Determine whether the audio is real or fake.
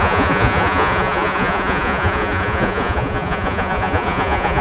fake